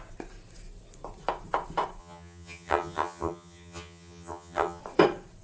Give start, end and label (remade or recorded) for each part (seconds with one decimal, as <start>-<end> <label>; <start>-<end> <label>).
0.0-2.0 recorded; 2.0-4.8 remade; 4.8-5.4 recorded